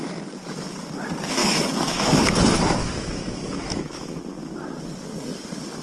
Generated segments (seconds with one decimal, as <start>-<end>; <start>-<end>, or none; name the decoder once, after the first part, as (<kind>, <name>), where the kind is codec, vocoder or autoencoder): 1.4-2.1 (autoencoder, DAC-VAE); 2.8-4.2